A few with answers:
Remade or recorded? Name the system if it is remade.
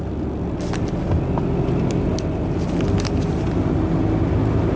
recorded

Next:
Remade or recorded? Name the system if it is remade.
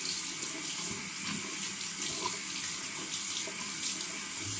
recorded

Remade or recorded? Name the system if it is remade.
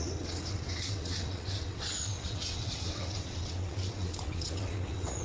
remade, vocoder, WaveNeXt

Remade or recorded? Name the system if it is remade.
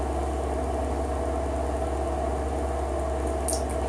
recorded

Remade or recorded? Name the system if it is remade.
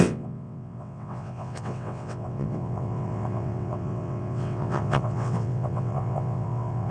remade, vocoder, WaveNeXt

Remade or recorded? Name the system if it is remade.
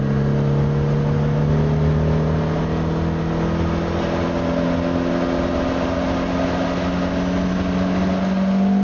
recorded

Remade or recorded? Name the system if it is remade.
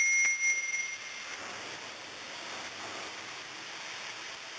recorded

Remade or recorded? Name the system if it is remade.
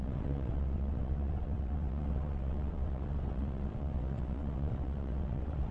remade, vocoder, WaveNeXt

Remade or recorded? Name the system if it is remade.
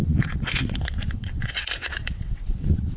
remade, vocoder, WaveNeXt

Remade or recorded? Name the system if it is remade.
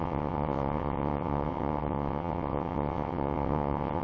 remade, vocoder, WaveNeXt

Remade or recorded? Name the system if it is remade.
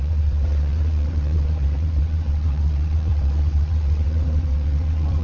remade, vocoder, WaveNeXt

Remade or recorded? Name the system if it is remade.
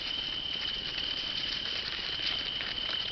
recorded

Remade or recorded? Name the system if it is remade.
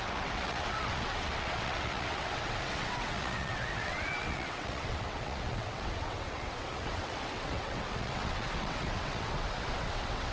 remade, vocoder, WaveNeXt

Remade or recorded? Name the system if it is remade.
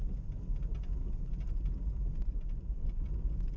recorded